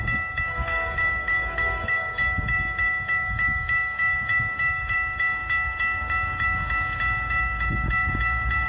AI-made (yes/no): yes